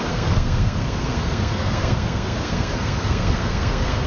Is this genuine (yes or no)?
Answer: no